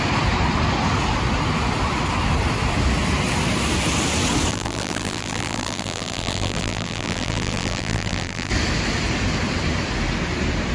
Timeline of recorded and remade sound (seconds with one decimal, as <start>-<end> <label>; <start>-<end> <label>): 0.0-4.5 recorded; 4.5-8.5 remade; 8.5-10.7 recorded